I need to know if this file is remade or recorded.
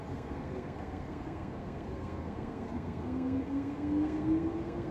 remade